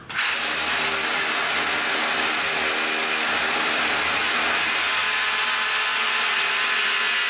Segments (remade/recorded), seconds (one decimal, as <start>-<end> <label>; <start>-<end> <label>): 0.0-7.3 recorded